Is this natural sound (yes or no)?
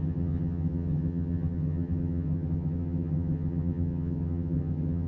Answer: no